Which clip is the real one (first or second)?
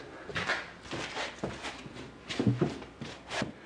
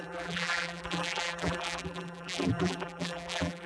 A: first